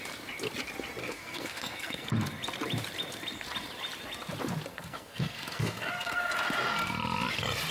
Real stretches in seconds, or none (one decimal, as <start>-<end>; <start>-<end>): 0.0-1.0; 2.1-4.7; 6.3-7.7